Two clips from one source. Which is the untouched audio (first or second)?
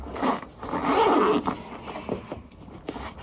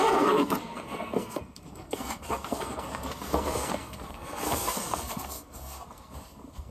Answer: first